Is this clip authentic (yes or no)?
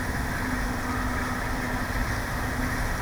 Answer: yes